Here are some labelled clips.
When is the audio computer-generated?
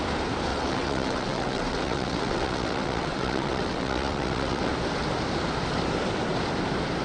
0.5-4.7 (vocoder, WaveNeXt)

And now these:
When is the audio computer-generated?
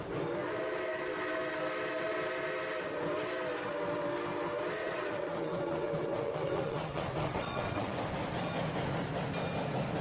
4.8-8.0 (vocoder, WaveNeXt)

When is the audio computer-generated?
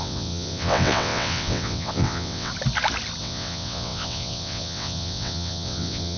0.0-2.5 (vocoder, WaveNeXt); 3.2-6.2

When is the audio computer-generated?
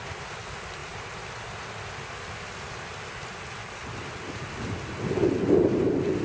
none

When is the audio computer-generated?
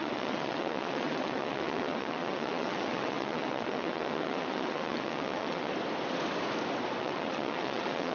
0.0-5.7 (vocoder, WaveNeXt); 7.0-8.1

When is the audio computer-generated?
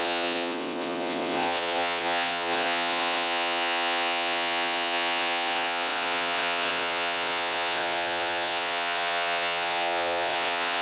0.0-10.8 (vocoder, WaveNeXt)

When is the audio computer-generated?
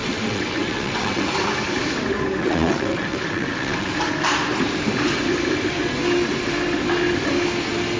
0.0-1.3 (vocoder, WaveNeXt); 2.4-3.9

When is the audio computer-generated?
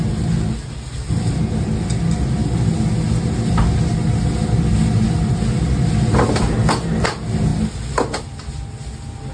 none